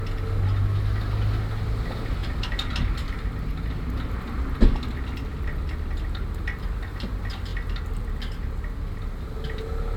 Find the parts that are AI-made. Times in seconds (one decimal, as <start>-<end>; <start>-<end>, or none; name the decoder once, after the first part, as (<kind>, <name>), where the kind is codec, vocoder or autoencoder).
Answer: 2.2-4.6 (vocoder, BigVGAN v2)